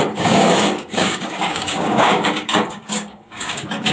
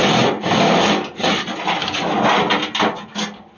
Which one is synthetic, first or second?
first